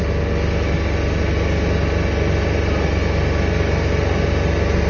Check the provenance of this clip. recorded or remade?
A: recorded